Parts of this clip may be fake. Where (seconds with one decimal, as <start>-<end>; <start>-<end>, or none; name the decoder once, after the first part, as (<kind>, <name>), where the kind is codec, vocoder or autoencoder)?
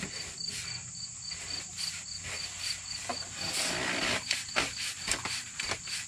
none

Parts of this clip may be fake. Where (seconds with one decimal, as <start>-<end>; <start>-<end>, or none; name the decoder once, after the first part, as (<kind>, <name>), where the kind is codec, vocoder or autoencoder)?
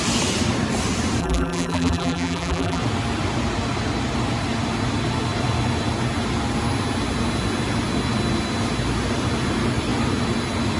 1.2-2.8 (vocoder, BigVGAN v2)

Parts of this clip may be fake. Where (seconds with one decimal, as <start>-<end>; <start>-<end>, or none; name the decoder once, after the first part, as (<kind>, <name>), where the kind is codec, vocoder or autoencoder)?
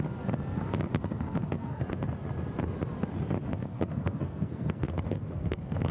0.9-1.8 (codec, SNAC); 3.5-5.9